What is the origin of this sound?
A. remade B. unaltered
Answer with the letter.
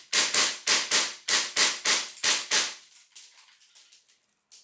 B